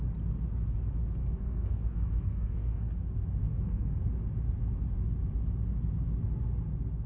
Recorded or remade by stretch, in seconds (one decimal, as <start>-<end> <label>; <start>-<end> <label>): 0.0-1.2 recorded; 1.2-2.9 remade; 2.9-3.5 recorded; 3.5-4.0 remade; 4.0-7.1 recorded